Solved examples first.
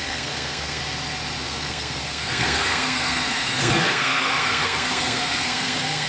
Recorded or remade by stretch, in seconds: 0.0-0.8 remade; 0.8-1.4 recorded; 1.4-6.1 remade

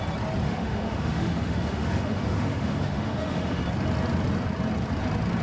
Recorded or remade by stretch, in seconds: 0.0-0.4 recorded; 0.4-3.6 remade; 3.6-5.4 recorded

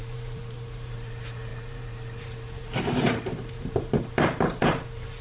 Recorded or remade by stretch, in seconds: 0.0-5.2 remade

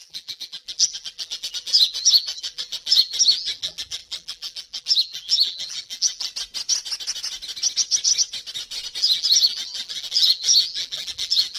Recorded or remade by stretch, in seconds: 0.0-6.3 remade; 6.3-9.0 recorded; 9.0-11.6 remade

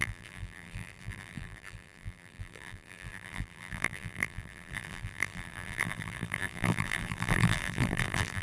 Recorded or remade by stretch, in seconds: 0.0-8.4 remade

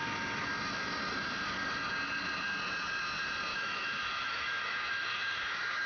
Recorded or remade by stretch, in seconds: 0.0-3.5 recorded; 3.5-5.9 remade